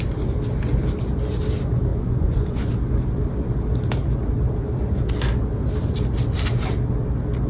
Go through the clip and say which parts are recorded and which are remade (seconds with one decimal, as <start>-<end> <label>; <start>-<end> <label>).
0.0-1.9 recorded; 1.9-2.7 remade; 2.7-7.5 recorded